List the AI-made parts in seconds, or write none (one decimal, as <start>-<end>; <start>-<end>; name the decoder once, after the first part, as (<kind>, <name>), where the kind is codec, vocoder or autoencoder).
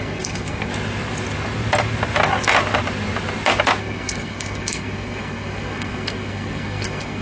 0.0-0.7 (codec, SNAC); 3.8-7.2